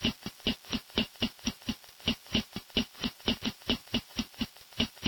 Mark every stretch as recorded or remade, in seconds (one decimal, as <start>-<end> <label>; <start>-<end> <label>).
0.0-0.8 recorded; 0.8-1.6 remade; 1.6-2.2 recorded; 2.2-5.1 remade